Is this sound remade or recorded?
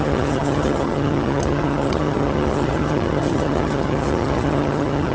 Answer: remade